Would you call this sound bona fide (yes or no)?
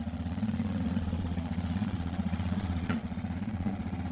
no